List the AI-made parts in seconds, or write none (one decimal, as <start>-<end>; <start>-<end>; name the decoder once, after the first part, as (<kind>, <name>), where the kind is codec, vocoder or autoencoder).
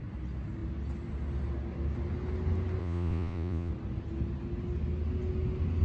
2.8-3.7 (vocoder, Vocos)